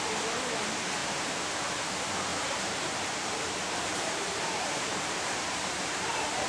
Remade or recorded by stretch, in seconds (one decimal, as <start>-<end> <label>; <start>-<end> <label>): 0.0-1.0 recorded; 1.0-1.8 remade; 1.8-2.3 recorded; 2.3-6.5 remade